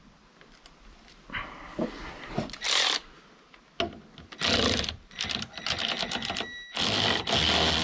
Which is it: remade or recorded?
recorded